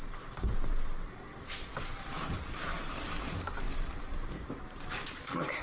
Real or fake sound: fake